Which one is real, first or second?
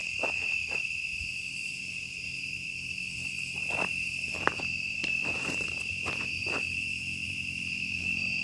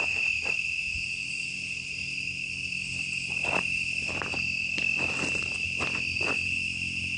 second